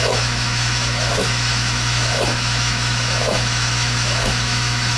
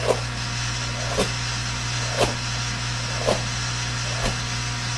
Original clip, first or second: second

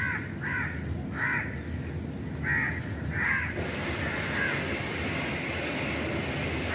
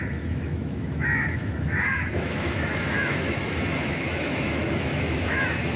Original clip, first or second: first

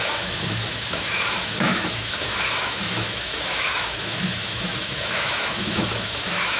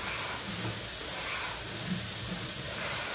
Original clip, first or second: second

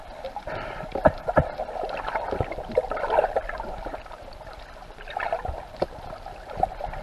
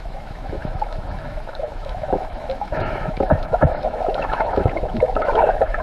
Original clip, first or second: first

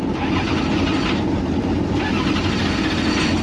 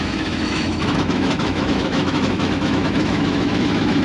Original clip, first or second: first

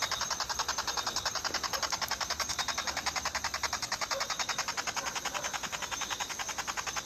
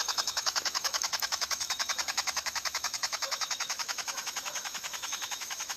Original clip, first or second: first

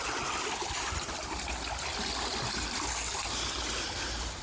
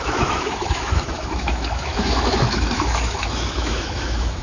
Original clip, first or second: first